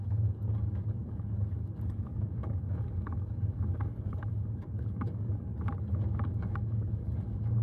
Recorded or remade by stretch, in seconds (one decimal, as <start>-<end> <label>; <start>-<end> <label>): 0.0-5.5 remade; 5.5-6.0 recorded; 6.0-7.6 remade